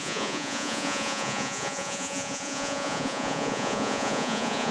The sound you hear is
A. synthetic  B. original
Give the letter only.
A